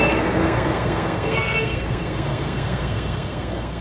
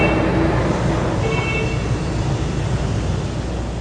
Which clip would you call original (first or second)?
second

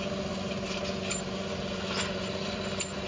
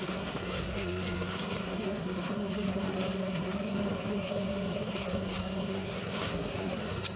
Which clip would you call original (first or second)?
first